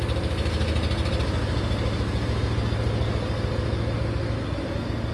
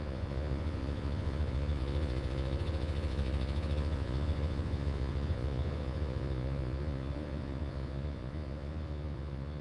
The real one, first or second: first